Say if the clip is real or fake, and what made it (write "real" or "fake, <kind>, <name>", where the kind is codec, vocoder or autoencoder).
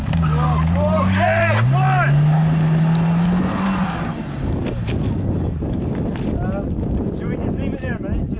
real